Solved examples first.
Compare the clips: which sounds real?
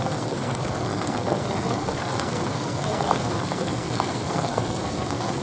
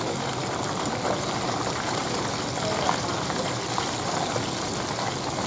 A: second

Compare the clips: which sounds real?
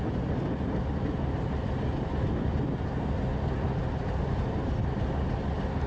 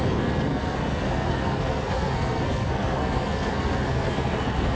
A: first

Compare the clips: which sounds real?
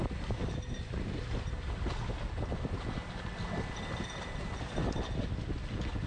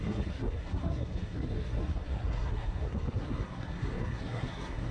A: first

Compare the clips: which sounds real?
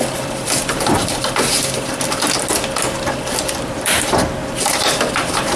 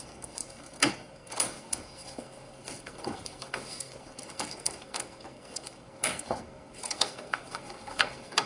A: first